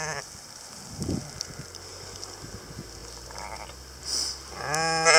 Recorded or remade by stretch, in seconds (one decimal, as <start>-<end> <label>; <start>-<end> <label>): 0.0-1.9 recorded; 1.9-2.6 remade; 2.6-5.2 recorded